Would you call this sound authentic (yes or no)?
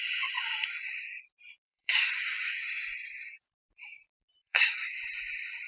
no